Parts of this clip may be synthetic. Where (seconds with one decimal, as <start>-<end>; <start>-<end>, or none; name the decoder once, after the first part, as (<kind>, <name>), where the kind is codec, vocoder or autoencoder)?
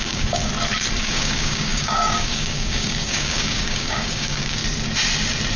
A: 0.0-0.5 (codec, DAC); 1.0-4.6